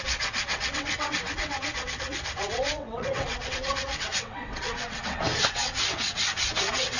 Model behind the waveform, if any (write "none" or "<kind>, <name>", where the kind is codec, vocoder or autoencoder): vocoder, WaveNeXt